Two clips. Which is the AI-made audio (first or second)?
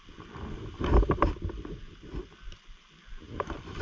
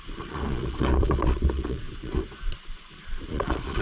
second